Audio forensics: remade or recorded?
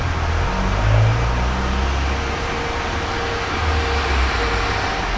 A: recorded